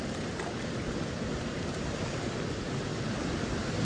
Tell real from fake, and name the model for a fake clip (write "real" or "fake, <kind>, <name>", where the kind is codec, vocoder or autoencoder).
fake, vocoder, BigVGAN v2